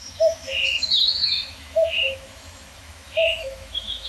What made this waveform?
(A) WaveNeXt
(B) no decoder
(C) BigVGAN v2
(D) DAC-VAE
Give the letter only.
D